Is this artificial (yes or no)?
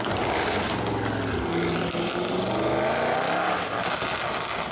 no